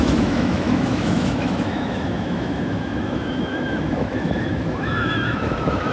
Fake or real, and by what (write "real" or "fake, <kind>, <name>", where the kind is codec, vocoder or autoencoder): fake, autoencoder, DAC-VAE